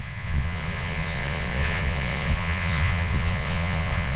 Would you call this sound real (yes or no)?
no